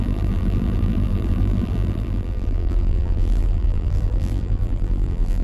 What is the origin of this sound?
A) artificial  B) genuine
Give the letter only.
A